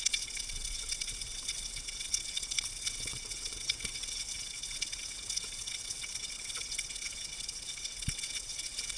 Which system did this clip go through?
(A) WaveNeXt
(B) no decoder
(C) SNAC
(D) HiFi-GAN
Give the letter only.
A